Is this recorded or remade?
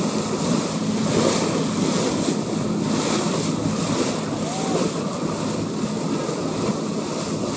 recorded